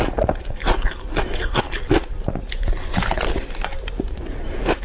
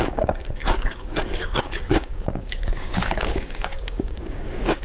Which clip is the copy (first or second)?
second